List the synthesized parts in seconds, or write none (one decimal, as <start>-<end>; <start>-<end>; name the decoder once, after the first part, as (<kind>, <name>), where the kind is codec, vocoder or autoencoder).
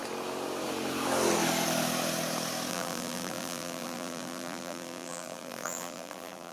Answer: 2.7-6.5 (vocoder, BigVGAN v2)